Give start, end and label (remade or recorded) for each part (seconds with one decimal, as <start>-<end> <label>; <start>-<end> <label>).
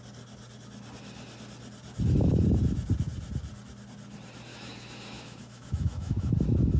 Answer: 0.0-4.5 recorded; 4.5-6.3 remade; 6.3-6.8 recorded